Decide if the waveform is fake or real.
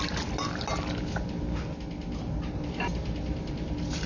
real